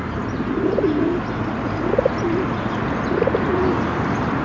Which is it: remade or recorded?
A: recorded